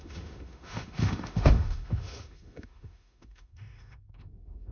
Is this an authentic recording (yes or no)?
no